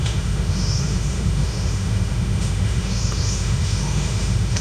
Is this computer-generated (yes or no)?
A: yes